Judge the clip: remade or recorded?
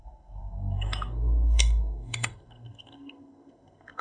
remade